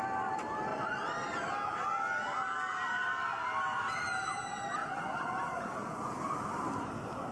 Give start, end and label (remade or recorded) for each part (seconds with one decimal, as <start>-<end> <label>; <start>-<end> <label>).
0.0-0.7 recorded; 0.7-1.5 remade; 1.5-4.8 recorded; 4.8-6.2 remade; 6.2-7.3 recorded